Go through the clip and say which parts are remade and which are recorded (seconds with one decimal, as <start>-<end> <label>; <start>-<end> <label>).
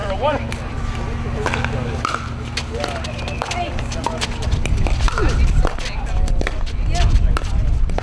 0.0-8.0 recorded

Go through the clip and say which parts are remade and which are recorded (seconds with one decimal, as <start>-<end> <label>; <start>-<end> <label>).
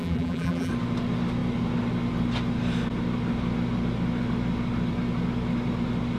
0.0-0.7 remade; 0.7-6.2 recorded